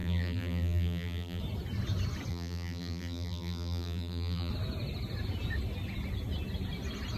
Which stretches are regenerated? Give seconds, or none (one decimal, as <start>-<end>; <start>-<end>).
0.0-1.4; 2.3-4.5